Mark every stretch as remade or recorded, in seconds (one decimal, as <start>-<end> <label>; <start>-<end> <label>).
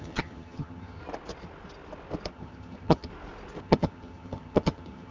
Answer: 0.0-1.0 remade; 1.0-2.3 recorded; 2.3-3.1 remade; 3.1-3.6 recorded; 3.6-5.1 remade